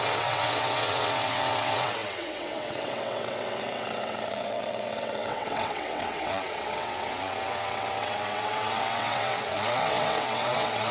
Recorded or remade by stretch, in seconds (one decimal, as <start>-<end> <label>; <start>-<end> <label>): 0.0-10.9 remade